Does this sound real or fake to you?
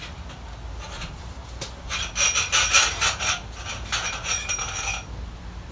real